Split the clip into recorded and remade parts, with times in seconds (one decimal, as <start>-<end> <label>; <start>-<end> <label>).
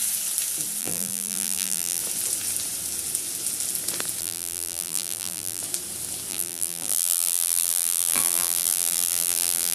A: 0.0-0.8 recorded; 0.8-2.0 remade; 2.0-4.2 recorded; 4.2-5.6 remade; 5.6-6.3 recorded; 6.3-9.7 remade